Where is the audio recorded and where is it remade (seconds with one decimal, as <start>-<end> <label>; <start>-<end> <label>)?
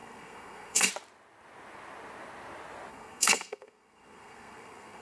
0.0-0.9 remade; 0.9-2.9 recorded; 2.9-5.0 remade